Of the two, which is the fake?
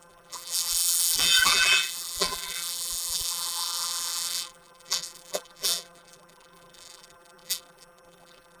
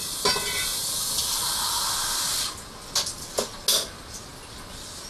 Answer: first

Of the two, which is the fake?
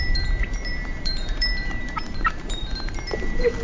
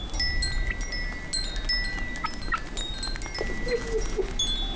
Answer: first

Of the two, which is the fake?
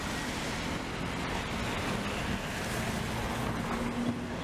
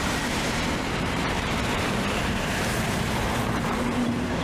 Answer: second